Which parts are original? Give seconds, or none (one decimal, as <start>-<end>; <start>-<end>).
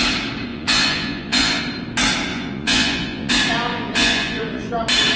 0.0-0.5; 1.6-2.3; 3.3-3.7; 4.7-5.2